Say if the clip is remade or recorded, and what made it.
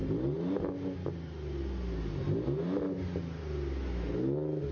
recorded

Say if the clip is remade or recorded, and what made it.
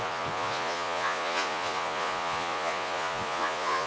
remade, vocoder, Vocos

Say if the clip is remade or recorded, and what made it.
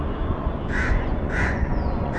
remade, vocoder, Vocos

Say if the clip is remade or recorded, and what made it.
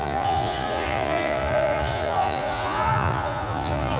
remade, vocoder, Vocos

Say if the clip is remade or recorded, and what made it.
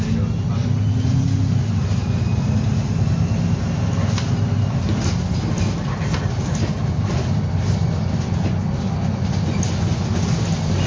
recorded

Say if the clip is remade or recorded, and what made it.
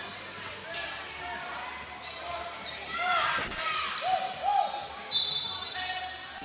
recorded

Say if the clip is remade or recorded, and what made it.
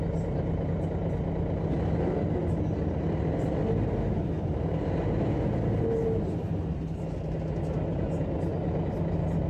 recorded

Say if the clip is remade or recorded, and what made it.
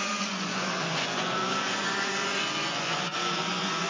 remade, vocoder, Vocos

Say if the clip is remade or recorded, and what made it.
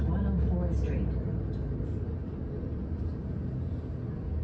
recorded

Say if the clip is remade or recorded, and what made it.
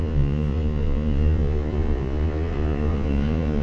remade, vocoder, Vocos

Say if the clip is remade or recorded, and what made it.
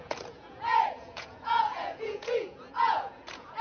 remade, vocoder, Vocos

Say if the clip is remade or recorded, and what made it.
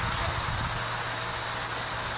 recorded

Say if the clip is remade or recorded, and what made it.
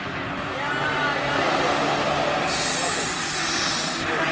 recorded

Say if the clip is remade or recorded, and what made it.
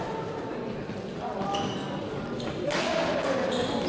recorded